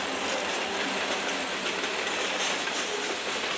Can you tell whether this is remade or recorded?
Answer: recorded